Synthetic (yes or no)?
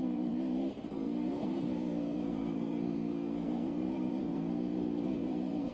yes